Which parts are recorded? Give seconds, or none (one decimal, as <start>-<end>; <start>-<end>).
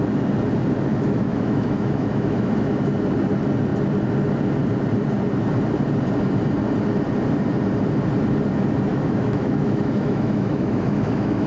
0.0-0.9; 2.9-8.9